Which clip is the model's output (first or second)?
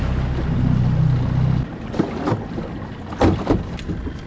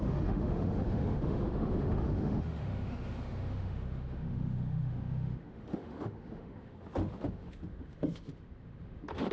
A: second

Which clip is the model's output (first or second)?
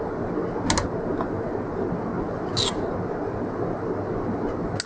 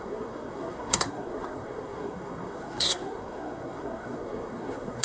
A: second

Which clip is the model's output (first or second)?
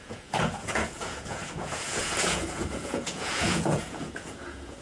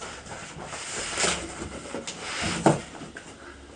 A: first